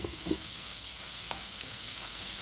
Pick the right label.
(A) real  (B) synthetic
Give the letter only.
B